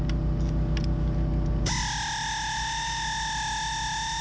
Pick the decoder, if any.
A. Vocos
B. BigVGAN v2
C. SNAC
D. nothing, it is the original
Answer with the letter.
D